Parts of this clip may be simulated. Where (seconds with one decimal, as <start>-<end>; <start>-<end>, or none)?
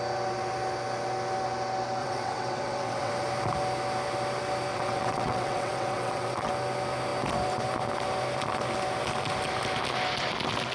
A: 2.0-3.1; 4.7-6.5